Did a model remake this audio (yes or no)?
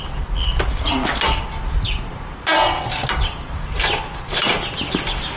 no